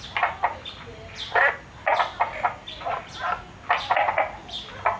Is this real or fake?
real